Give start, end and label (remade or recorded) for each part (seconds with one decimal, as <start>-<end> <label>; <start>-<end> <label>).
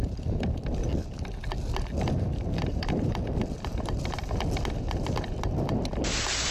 0.0-2.3 recorded; 2.3-3.2 remade; 3.2-6.5 recorded